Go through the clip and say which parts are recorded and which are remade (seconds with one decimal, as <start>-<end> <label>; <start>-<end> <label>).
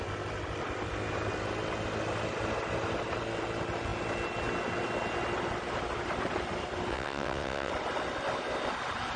0.0-6.9 recorded; 6.9-7.7 remade; 7.7-9.2 recorded